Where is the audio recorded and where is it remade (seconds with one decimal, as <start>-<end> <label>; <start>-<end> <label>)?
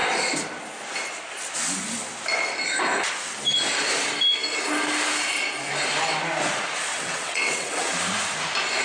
0.0-6.9 recorded; 6.9-7.9 remade; 7.9-8.8 recorded